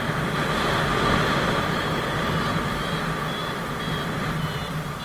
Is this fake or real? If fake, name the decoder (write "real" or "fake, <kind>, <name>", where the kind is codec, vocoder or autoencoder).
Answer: real